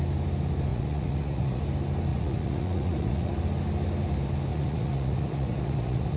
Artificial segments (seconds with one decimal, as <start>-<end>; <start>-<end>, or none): 0.7-1.6; 2.1-3.3; 4.5-6.2